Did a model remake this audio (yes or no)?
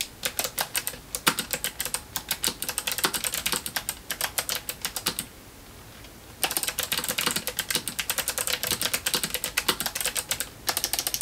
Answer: no